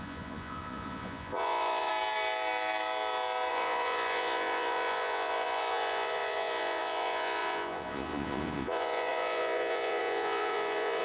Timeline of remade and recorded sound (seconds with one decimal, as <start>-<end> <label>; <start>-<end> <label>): 0.0-1.9 remade; 1.9-3.5 recorded; 3.5-11.0 remade